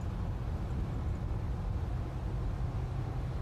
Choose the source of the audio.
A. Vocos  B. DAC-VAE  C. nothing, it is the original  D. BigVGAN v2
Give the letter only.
C